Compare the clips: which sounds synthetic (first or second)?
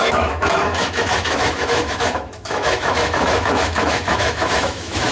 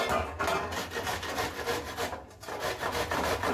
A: first